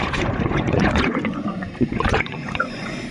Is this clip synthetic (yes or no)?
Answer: yes